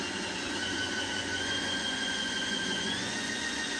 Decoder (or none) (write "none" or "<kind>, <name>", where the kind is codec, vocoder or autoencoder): vocoder, Vocos